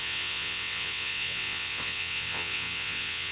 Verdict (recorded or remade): remade